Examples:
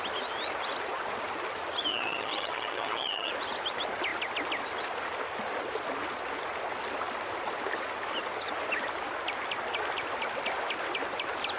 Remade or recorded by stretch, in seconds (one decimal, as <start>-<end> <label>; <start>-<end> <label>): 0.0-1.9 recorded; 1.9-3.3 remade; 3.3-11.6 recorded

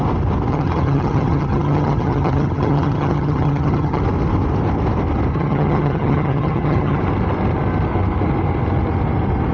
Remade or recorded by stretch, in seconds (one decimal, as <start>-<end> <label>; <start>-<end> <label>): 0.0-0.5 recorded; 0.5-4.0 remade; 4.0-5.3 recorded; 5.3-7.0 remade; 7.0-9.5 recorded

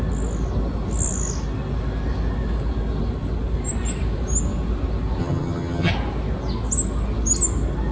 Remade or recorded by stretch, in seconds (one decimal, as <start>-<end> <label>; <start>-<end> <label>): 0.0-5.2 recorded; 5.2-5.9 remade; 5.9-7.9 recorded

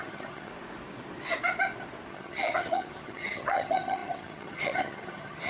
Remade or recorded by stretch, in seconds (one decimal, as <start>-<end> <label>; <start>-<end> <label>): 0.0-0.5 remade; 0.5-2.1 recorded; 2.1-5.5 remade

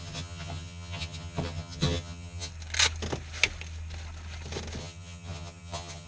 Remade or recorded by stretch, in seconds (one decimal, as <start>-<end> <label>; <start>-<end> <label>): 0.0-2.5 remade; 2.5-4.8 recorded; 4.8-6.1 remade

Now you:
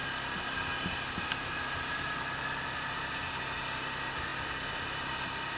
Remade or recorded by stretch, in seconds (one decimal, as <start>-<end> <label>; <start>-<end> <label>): 0.0-5.6 recorded

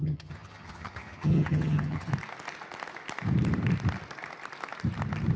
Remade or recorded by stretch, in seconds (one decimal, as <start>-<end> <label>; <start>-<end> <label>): 0.0-2.1 remade; 2.1-5.4 recorded